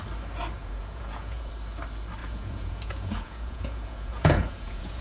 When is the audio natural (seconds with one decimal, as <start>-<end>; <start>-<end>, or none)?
0.0-0.6; 1.5-2.2